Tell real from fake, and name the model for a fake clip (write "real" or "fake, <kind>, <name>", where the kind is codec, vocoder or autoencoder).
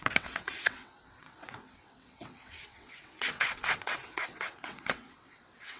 fake, vocoder, WaveNeXt